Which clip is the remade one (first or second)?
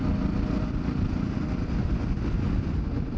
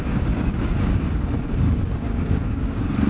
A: second